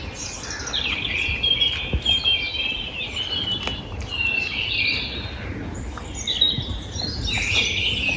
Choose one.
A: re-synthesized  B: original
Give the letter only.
B